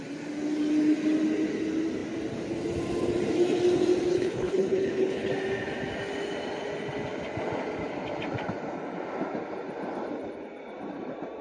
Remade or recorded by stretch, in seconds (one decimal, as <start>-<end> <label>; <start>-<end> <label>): 0.0-4.1 recorded; 4.1-5.3 remade; 5.3-11.4 recorded